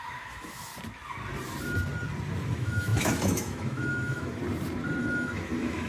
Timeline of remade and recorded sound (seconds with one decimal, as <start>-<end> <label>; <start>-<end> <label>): 0.0-0.7 remade; 0.7-2.5 recorded; 2.5-4.4 remade; 4.4-5.0 recorded; 5.0-5.9 remade